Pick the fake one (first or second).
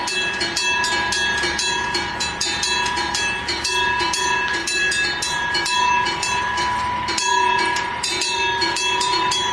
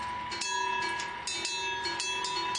first